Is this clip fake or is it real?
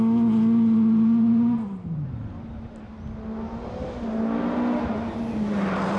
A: real